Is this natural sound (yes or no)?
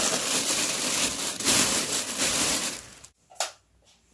yes